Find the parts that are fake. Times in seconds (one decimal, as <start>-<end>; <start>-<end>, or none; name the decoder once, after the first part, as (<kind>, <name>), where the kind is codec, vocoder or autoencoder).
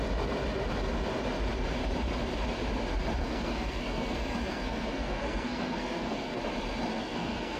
3.2-6.4 (codec, SNAC); 6.9-7.6